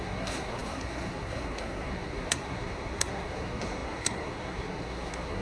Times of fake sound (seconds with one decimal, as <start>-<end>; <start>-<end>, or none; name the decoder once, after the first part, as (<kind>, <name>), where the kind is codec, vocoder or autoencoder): 0.0-5.4 (codec, SNAC)